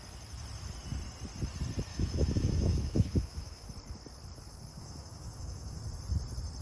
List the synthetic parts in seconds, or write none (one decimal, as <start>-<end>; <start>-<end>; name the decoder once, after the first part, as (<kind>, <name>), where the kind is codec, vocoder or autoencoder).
1.9-3.7 (autoencoder, DAC-VAE); 4.7-5.8